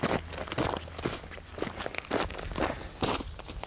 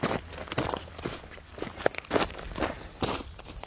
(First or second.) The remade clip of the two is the second